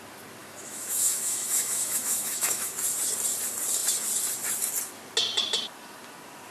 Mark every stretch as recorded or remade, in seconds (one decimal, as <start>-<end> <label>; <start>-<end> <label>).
0.0-0.4 recorded; 0.4-2.7 remade; 2.7-6.5 recorded